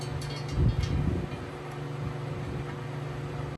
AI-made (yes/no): no